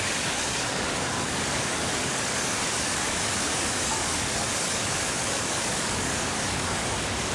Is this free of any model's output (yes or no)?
no